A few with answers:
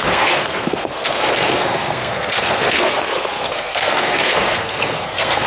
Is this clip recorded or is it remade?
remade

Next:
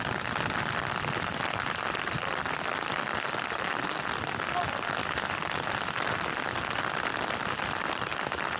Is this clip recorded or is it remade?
remade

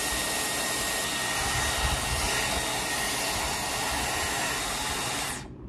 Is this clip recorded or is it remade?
recorded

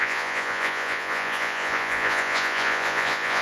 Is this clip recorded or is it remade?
remade